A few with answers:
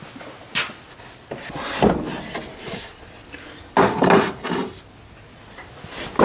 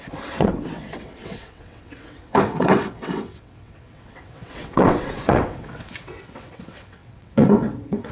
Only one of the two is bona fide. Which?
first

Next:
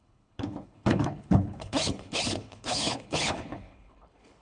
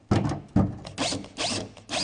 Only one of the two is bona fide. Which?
second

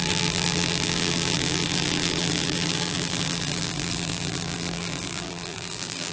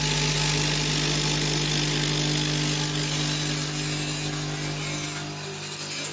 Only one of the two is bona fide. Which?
second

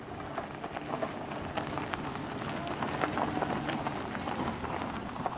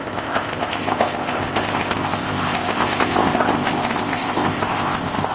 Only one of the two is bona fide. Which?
first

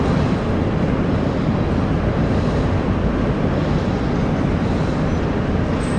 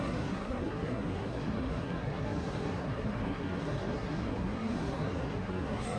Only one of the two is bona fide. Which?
first